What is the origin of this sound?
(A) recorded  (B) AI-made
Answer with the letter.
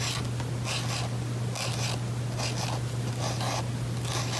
A